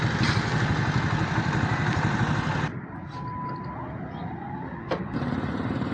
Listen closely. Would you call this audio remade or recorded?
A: recorded